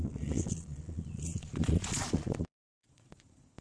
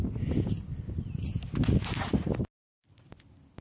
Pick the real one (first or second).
second